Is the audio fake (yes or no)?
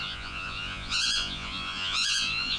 yes